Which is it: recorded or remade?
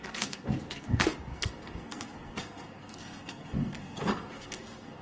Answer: remade